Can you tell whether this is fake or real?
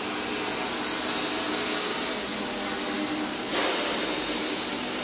real